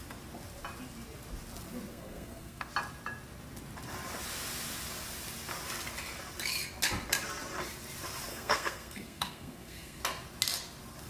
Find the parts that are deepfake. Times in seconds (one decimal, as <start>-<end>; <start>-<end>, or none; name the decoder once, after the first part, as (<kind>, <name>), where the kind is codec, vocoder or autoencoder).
1.9-2.7 (codec, SNAC); 8.3-10.0